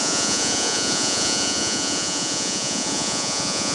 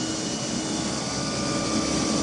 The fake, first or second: first